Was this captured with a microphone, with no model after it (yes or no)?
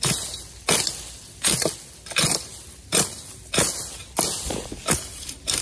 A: yes